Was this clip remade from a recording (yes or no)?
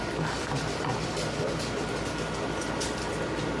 no